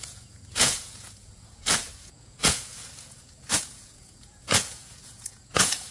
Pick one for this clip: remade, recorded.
remade